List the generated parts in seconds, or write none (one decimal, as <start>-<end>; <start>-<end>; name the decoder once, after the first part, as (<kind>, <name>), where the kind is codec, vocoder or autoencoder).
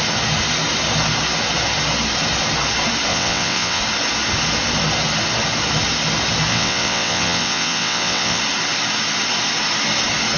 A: 3.1-3.8 (vocoder, WaveNeXt); 6.5-8.4